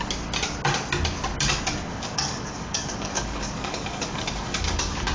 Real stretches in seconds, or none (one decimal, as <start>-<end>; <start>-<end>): 0.0-1.9